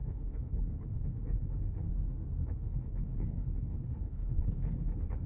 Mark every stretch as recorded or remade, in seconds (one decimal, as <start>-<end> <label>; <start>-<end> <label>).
0.0-1.9 remade; 1.9-2.4 recorded; 2.4-5.3 remade